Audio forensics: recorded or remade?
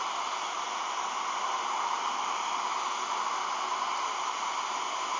recorded